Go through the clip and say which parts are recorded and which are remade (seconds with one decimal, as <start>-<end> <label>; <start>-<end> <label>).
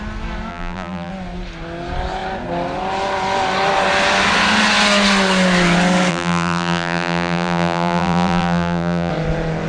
0.0-0.5 recorded; 0.5-1.1 remade; 1.1-6.1 recorded; 6.1-9.1 remade; 9.1-9.7 recorded